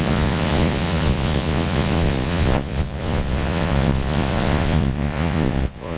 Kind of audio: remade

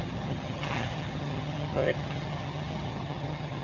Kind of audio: remade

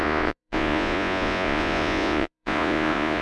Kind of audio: remade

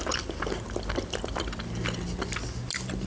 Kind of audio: recorded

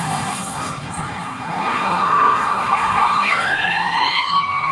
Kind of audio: remade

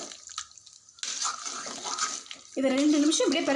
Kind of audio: recorded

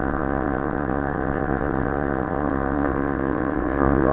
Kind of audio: remade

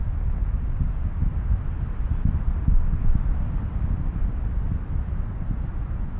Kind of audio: recorded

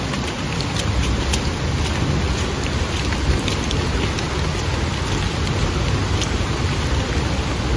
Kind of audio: recorded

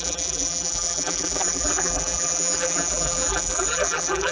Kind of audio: remade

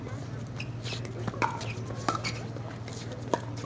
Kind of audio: recorded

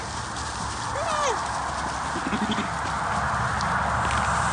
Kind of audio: recorded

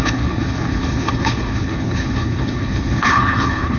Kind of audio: remade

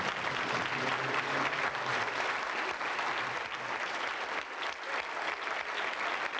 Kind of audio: recorded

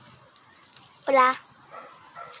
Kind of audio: recorded